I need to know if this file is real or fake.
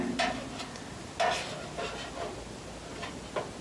real